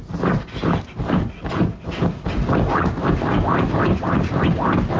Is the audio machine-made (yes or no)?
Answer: yes